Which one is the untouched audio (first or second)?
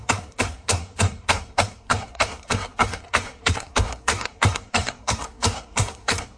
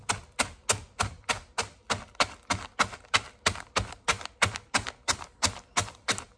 second